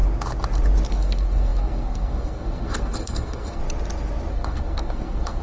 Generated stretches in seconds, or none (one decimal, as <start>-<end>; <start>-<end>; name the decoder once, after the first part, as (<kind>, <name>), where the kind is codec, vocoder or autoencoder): 0.9-3.6 (codec, SNAC); 4.3-5.4